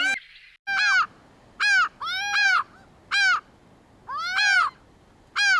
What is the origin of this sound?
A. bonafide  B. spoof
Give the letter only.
A